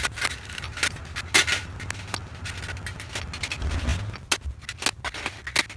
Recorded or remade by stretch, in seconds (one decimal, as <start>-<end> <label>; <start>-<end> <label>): 0.0-5.8 recorded

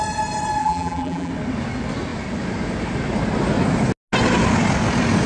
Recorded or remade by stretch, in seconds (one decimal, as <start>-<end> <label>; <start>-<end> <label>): 0.0-0.6 recorded; 0.6-1.3 remade; 1.3-5.3 recorded